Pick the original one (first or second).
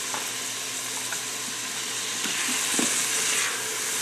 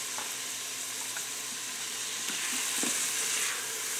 first